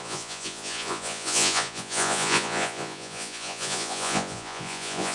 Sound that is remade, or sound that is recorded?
remade